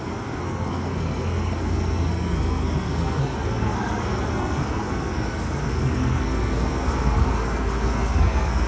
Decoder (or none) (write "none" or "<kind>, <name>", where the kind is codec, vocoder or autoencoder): codec, SNAC